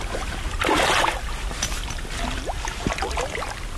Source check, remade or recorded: recorded